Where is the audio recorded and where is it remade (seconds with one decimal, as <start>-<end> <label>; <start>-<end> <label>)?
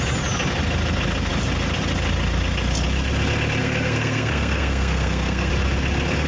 0.0-3.6 recorded; 3.6-5.5 remade; 5.5-6.3 recorded